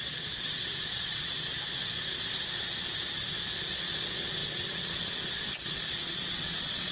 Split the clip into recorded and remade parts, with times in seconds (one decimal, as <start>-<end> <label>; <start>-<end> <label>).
0.0-1.5 remade; 1.5-3.3 recorded; 3.3-6.9 remade